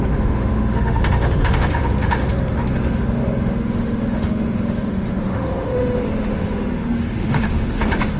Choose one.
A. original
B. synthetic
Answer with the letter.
B